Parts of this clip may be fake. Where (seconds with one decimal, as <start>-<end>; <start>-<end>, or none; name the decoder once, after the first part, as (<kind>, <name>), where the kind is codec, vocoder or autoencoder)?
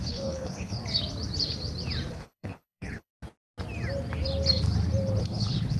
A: 0.0-0.8 (codec, HILCodec); 2.1-3.1; 5.2-5.8